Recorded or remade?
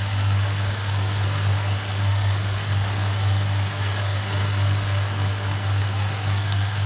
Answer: remade